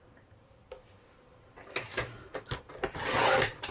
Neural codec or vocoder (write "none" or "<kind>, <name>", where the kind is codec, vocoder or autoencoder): none